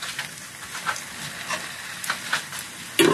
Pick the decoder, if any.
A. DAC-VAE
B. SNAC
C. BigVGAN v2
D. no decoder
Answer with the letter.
D